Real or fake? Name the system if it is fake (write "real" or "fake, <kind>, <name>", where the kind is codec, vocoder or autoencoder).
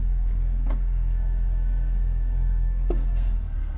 fake, codec, SNAC